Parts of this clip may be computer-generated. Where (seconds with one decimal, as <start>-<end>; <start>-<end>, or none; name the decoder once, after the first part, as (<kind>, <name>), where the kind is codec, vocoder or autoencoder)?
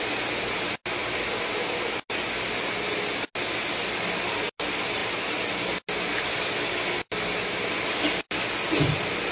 none